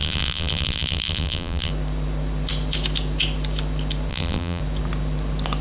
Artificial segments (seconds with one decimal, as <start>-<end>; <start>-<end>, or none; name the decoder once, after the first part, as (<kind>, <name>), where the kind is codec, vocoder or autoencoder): 0.0-1.7 (vocoder, BigVGAN v2); 4.1-4.6